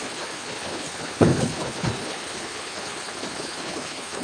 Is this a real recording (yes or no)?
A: no